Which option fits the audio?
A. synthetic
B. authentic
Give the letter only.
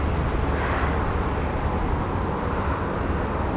B